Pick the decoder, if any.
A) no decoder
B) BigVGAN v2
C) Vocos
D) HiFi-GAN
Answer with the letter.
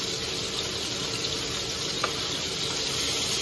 A